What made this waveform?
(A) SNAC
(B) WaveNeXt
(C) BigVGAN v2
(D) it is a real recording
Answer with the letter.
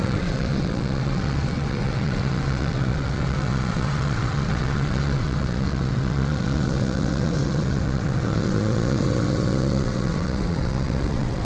B